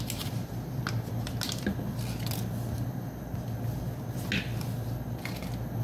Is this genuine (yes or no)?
yes